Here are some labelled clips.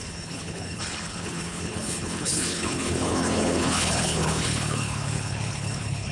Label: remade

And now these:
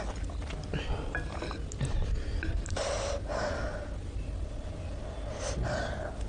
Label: recorded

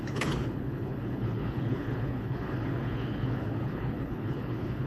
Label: remade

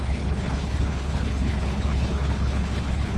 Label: remade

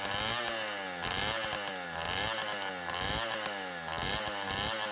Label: recorded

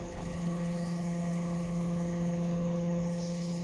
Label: remade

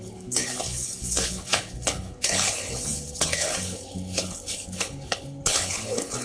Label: remade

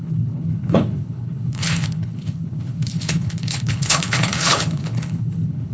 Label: remade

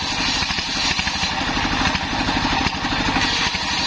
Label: recorded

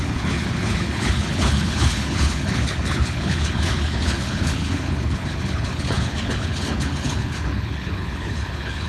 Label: remade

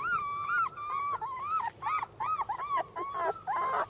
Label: recorded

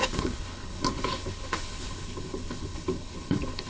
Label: remade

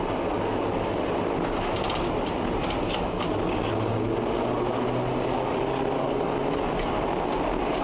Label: recorded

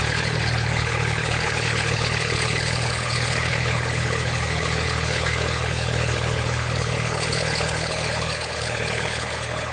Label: remade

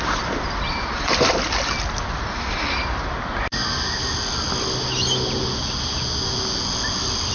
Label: recorded